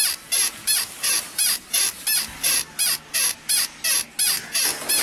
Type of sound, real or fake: real